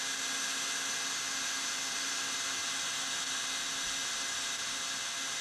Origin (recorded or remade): recorded